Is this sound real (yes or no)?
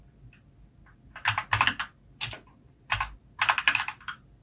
yes